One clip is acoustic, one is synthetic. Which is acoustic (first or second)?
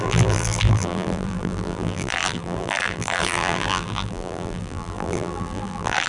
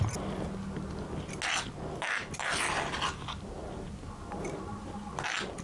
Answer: second